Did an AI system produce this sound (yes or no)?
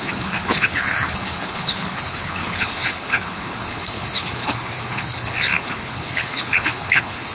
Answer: yes